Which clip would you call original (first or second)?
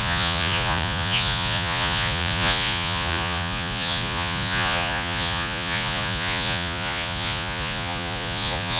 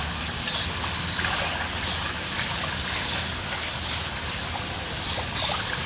second